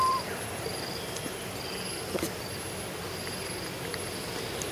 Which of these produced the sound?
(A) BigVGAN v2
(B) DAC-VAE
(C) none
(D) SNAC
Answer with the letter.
C